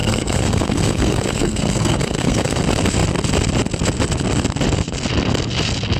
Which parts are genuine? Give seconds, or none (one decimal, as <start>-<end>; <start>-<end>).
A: 2.6-6.0